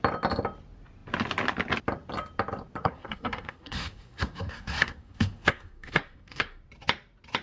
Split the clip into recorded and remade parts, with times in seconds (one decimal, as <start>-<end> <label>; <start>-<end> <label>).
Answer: 0.0-2.8 recorded; 2.8-6.6 remade; 6.6-7.4 recorded